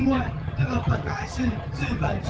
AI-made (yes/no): yes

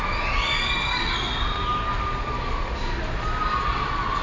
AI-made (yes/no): no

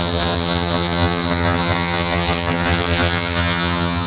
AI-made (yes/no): yes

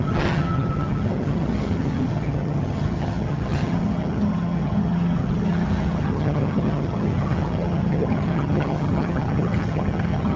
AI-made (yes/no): yes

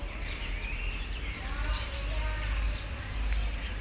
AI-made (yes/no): no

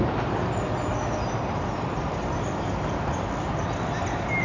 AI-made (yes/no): no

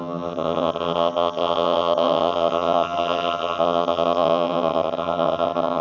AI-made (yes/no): yes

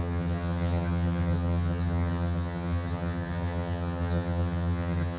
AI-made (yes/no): yes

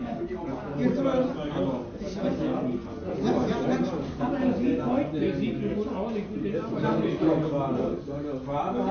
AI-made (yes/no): no